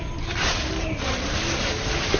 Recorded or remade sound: recorded